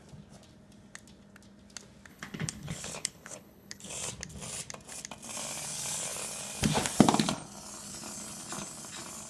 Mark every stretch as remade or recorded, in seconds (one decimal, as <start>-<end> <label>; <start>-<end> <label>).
0.0-2.1 recorded; 2.1-3.9 remade; 3.9-9.3 recorded